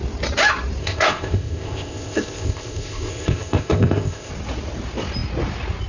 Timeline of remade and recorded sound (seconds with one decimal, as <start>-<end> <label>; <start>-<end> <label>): 0.0-0.8 recorded; 0.8-4.3 remade; 4.3-5.9 recorded